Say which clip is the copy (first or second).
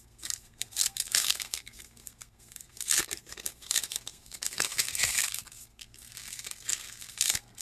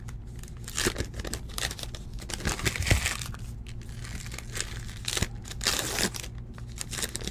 first